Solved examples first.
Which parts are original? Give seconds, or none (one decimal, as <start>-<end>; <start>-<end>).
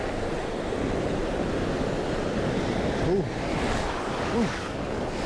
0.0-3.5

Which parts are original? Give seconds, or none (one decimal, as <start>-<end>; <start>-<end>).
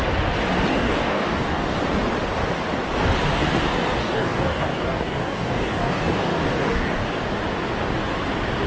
0.0-0.7; 1.7-4.0; 7.2-8.7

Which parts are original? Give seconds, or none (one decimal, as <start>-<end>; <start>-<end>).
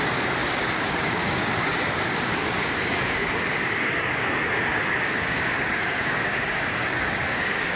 none